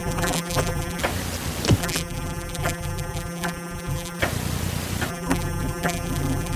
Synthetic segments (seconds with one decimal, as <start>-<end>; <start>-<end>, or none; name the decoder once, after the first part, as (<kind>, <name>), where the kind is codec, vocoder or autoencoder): 0.0-1.0 (vocoder, BigVGAN v2); 1.8-4.2; 5.1-6.6